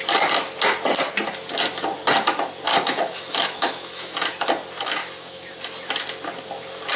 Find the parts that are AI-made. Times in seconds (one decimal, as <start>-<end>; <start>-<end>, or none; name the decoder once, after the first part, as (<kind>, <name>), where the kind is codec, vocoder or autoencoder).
2.7-4.3 (autoencoder, DAC-VAE); 5.0-5.5